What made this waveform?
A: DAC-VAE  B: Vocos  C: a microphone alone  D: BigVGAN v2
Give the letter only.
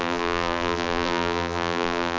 D